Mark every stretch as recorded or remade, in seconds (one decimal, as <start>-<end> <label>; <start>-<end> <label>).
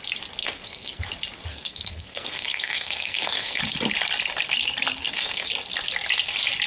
0.0-0.4 recorded; 0.4-1.0 remade; 1.0-1.5 recorded; 1.5-3.6 remade; 3.6-5.0 recorded; 5.0-5.5 remade; 5.5-6.7 recorded